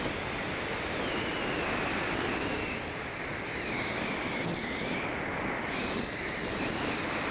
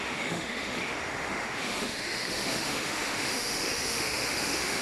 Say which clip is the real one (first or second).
first